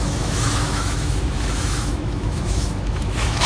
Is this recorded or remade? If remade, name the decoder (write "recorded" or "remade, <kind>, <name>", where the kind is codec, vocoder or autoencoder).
remade, autoencoder, DAC-VAE